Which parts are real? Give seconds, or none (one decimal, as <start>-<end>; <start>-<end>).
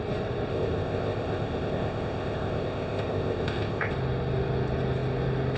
0.0-0.5; 3.9-5.6